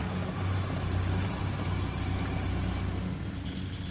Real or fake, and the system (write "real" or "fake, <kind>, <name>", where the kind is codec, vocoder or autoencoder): real